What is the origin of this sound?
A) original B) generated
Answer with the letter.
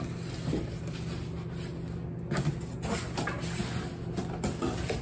A